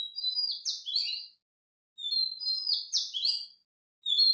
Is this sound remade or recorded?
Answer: recorded